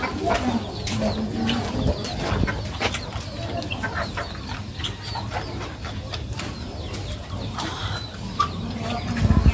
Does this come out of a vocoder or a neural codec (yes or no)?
no